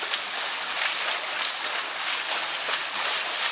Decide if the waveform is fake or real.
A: real